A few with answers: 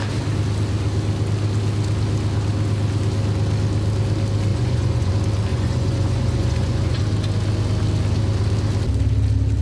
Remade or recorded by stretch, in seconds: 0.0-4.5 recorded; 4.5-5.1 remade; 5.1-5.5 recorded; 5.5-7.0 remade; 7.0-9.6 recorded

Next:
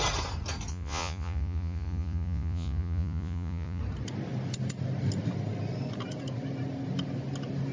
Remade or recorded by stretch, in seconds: 0.0-0.7 recorded; 0.7-3.8 remade; 3.8-7.7 recorded

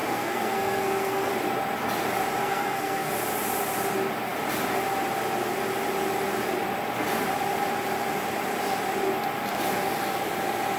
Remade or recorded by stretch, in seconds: 0.0-1.3 remade; 1.3-2.4 recorded; 2.4-3.1 remade; 3.1-10.8 recorded

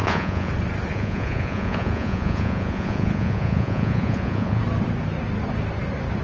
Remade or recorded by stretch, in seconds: 0.0-0.5 remade; 0.5-0.9 recorded; 0.9-4.6 remade; 4.6-6.2 recorded

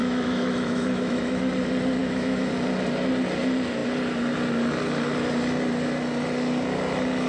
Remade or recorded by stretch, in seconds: 0.0-1.4 remade; 1.4-2.0 recorded; 2.0-2.5 remade; 2.5-7.3 recorded